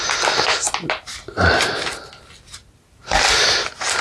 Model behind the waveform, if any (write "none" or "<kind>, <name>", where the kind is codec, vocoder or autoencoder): none